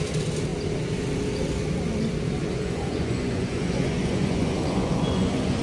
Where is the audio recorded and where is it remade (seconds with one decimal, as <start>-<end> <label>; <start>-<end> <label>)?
0.0-2.4 recorded; 2.4-5.6 remade